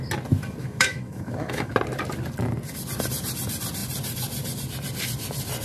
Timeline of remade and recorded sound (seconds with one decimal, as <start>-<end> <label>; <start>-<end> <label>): 0.0-0.6 recorded; 0.6-1.7 remade; 1.7-5.6 recorded